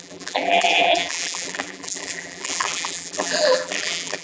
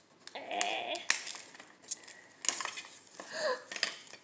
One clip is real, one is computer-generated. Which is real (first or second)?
second